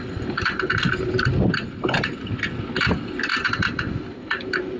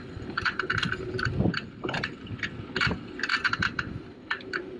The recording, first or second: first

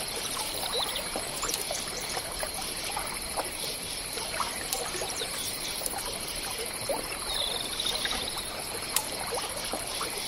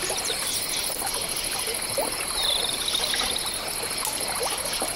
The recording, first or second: second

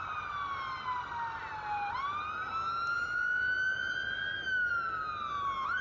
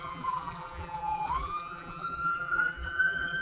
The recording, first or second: first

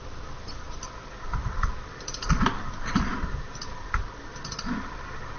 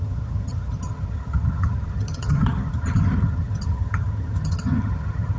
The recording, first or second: first